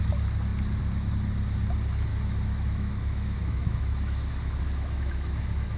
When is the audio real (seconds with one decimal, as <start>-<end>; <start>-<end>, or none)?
0.0-2.1